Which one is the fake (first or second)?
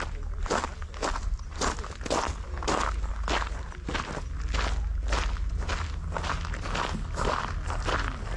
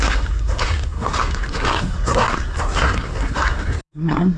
second